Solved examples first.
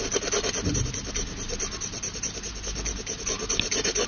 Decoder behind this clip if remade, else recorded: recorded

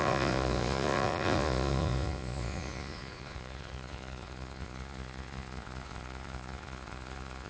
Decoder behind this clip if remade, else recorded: remade, vocoder, Vocos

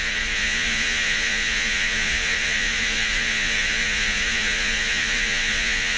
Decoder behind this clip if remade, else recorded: remade, vocoder, Vocos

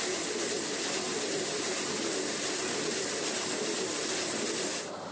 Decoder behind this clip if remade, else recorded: recorded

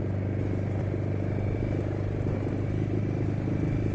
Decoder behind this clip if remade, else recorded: recorded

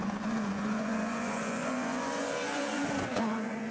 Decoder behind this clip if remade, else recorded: remade, vocoder, Vocos